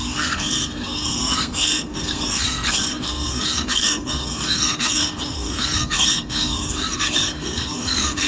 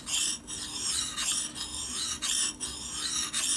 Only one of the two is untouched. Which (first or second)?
second